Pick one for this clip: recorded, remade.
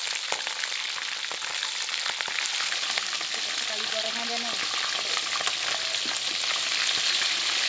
recorded